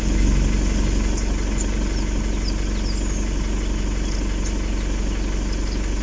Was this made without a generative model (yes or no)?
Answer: yes